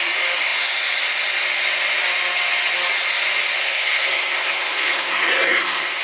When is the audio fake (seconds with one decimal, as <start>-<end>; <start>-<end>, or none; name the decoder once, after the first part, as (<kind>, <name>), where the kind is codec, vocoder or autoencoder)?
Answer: 3.6-6.0 (codec, SNAC)